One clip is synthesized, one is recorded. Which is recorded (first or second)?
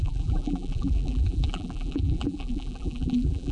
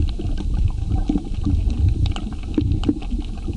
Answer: second